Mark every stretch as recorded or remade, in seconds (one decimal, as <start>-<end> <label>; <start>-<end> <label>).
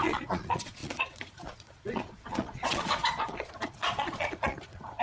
0.0-5.0 remade